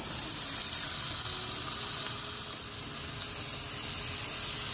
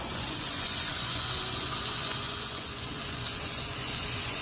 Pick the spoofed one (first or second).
second